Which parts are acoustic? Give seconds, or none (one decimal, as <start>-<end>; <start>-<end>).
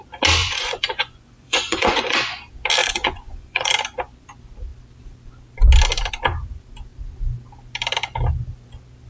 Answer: 0.0-0.4; 2.4-2.8; 3.7-9.1